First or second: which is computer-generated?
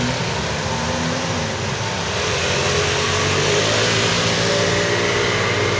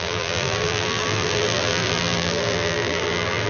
second